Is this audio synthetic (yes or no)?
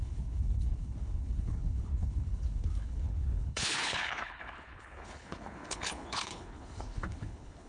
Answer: yes